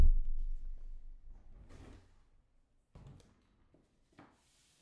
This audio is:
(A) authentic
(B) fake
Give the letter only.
A